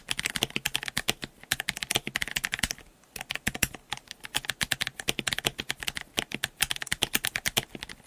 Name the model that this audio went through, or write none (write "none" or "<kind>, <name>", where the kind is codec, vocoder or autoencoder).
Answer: none